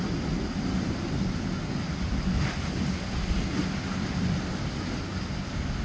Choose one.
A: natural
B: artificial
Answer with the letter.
A